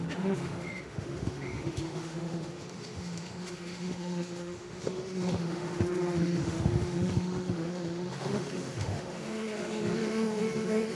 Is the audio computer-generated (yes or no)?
yes